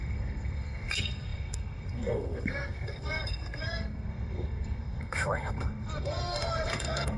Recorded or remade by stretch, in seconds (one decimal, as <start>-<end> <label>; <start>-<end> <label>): 0.0-7.2 remade